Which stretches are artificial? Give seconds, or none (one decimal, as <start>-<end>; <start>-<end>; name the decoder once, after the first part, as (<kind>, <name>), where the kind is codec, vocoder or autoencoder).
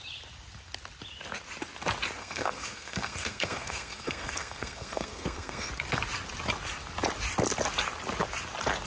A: 2.2-5.7 (codec, SNAC)